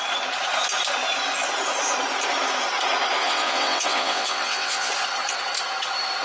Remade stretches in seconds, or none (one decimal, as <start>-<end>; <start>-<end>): 3.2-4.9